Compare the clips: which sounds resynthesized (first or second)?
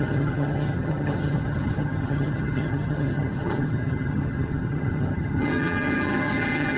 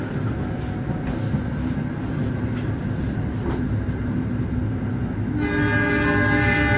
first